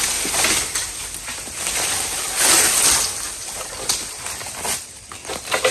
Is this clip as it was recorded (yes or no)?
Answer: yes